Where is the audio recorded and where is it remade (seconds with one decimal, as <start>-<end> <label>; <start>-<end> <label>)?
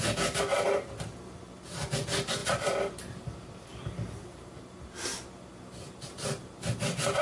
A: 0.0-2.4 recorded; 2.4-5.6 remade; 5.6-7.2 recorded